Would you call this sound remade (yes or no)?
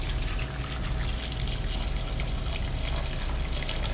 no